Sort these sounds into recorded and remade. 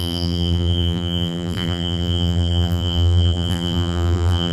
remade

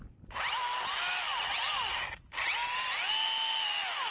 recorded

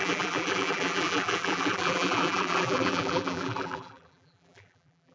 remade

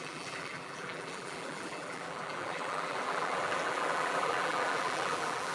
remade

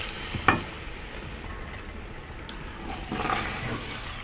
recorded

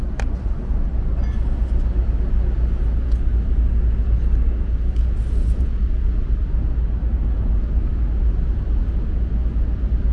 recorded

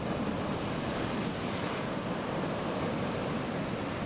remade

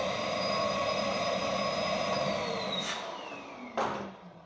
remade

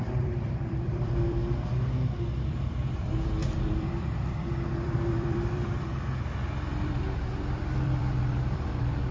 remade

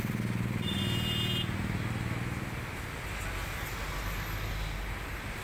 recorded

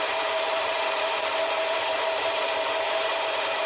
remade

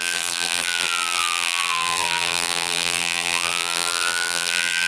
remade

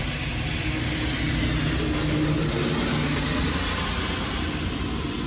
recorded